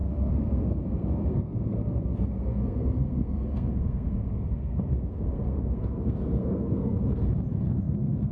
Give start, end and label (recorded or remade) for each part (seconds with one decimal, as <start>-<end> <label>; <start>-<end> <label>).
0.0-7.2 remade; 7.2-7.8 recorded; 7.8-8.3 remade